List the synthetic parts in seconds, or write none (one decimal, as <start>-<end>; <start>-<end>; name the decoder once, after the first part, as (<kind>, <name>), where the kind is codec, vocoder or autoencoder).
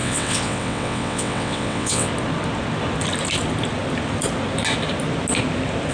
0.0-2.1 (vocoder, WaveNeXt)